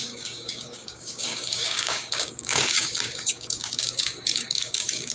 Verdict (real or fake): fake